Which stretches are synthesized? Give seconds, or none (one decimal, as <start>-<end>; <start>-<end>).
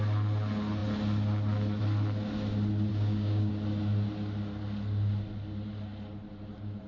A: 2.9-3.5